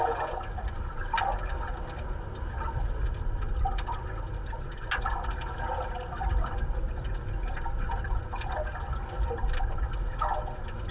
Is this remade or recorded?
recorded